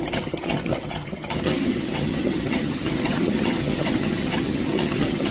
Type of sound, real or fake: fake